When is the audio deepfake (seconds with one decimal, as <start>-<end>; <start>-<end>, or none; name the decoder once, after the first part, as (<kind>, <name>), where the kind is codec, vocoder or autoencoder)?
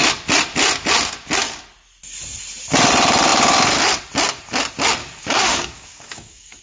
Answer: 5.0-6.6 (codec, DAC)